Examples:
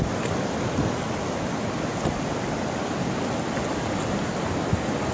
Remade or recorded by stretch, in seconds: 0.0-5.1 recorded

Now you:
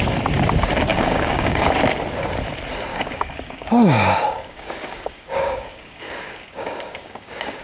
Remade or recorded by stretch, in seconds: 0.0-0.9 recorded; 0.9-1.7 remade; 1.7-2.9 recorded; 2.9-7.6 remade

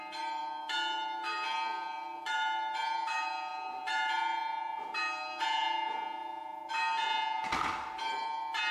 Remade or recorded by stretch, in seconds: 0.0-8.7 recorded